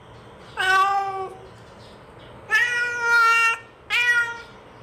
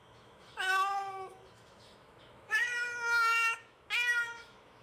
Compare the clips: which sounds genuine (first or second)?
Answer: first